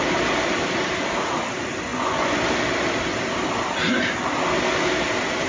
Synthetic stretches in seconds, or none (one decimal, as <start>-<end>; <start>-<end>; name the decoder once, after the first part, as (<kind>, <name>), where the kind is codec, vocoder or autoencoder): 1.9-2.4 (vocoder, Vocos)

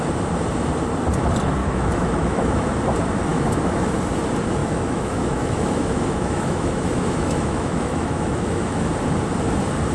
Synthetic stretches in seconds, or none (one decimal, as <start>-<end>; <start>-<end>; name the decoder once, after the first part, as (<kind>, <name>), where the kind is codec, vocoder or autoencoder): 1.6-2.7 (autoencoder, DAC-VAE); 3.3-3.9; 4.6-8.9